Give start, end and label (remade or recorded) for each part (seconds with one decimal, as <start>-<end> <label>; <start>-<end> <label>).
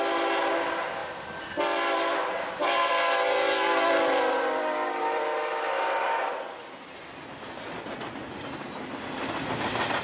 0.0-1.0 recorded; 1.0-5.2 remade; 5.2-10.0 recorded